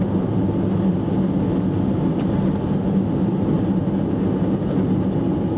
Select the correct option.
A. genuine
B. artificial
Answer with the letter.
A